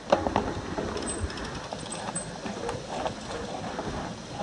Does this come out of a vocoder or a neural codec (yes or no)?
no